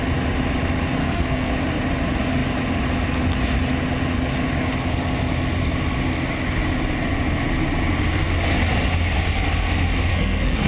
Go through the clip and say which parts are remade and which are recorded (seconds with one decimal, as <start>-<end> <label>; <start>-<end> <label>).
0.0-1.0 recorded; 1.0-1.5 remade; 1.5-10.1 recorded; 10.1-10.7 remade